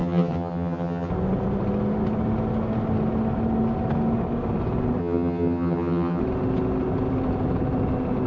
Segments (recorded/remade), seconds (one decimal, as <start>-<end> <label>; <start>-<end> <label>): 0.0-1.1 remade; 1.1-5.0 recorded; 5.0-6.2 remade; 6.2-8.3 recorded